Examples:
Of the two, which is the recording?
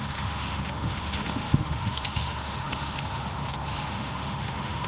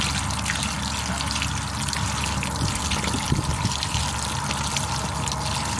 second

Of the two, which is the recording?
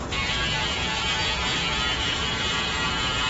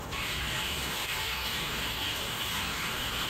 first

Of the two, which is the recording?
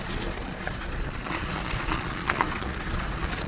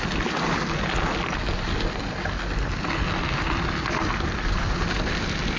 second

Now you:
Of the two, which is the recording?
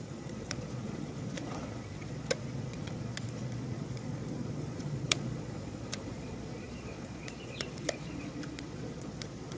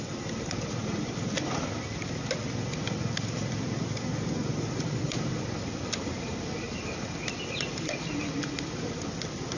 second